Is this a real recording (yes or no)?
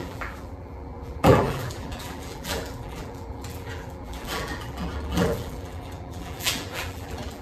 no